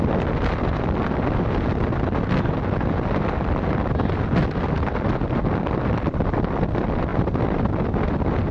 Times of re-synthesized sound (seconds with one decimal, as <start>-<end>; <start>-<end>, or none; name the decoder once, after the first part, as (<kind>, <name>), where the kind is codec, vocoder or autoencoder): none